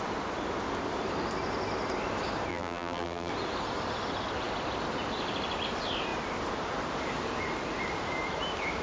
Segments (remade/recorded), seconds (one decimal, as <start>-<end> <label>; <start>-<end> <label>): 0.0-2.5 recorded; 2.5-3.3 remade; 3.3-8.8 recorded